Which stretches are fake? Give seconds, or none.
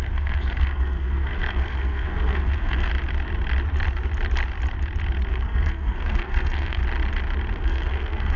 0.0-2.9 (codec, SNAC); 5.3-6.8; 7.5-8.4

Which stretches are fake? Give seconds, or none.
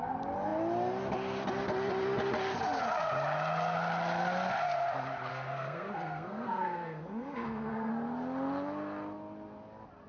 5.3-7.9 (codec, SNAC)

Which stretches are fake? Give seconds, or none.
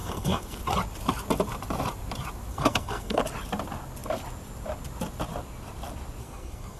0.0-0.6 (codec, SNAC); 2.5-3.2; 6.2-6.8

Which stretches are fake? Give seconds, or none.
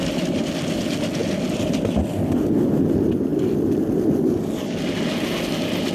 none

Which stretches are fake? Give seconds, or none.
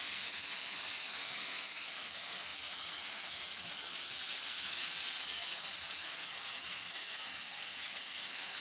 0.0-8.6 (codec, SNAC)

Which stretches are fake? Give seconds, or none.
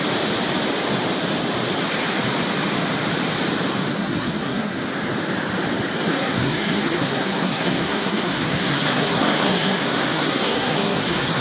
3.9-4.8 (codec, SNAC); 6.1-11.4